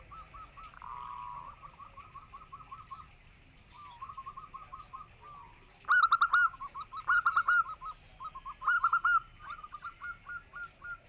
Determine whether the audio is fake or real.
real